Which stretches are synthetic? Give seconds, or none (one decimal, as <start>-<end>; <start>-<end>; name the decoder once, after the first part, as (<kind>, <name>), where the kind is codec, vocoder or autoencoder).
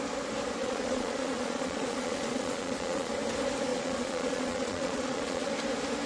0.6-3.1 (vocoder, Vocos); 3.7-5.5